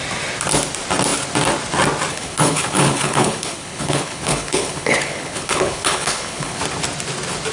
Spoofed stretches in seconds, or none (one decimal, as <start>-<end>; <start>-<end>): 2.1-6.6